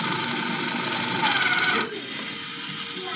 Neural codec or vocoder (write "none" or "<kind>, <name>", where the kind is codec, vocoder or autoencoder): none